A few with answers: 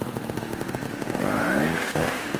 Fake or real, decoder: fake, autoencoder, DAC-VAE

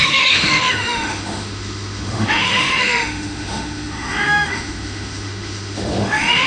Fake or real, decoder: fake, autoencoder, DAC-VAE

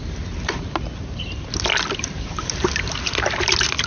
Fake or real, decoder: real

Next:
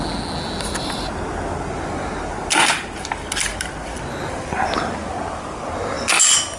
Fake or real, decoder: real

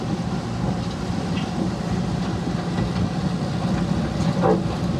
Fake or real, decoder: real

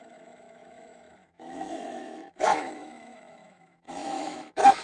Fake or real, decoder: fake, autoencoder, DAC-VAE